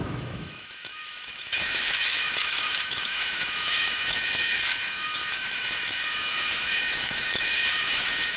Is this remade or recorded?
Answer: remade